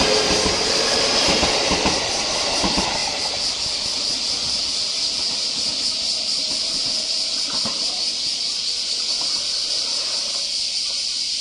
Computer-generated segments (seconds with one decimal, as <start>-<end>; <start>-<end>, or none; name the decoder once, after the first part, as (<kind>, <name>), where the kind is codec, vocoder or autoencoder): none

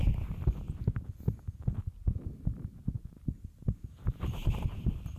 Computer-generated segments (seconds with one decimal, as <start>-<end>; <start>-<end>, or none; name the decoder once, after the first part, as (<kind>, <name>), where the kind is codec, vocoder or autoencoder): 2.3-5.2 (vocoder, BigVGAN v2)

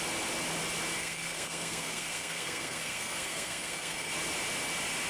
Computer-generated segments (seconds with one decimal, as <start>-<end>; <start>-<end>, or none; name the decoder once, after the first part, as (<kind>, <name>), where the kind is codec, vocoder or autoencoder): 1.0-4.1 (codec, SNAC)